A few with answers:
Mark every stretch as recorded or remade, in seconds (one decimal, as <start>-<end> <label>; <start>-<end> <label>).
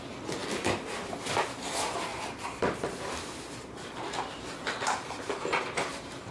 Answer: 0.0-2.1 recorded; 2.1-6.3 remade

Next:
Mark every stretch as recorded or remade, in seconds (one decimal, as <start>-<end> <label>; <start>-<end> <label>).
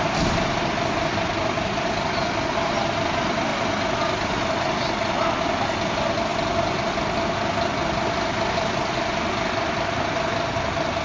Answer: 0.0-11.0 recorded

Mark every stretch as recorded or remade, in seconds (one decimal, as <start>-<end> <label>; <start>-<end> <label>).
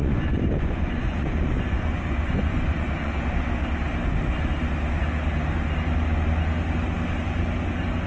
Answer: 0.0-3.1 remade; 3.1-8.1 recorded